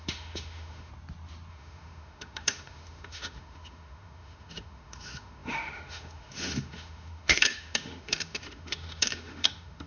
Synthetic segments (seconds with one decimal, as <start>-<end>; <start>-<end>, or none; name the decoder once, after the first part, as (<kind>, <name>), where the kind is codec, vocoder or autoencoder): 0.0-0.9 (autoencoder, DAC-VAE); 1.5-9.9